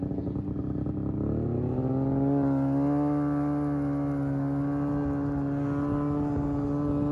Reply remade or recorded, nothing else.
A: recorded